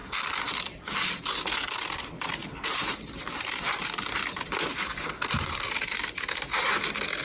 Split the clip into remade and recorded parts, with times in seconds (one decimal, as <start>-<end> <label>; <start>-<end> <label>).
0.0-7.2 recorded